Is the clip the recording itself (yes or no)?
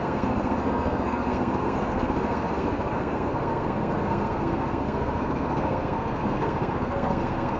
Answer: no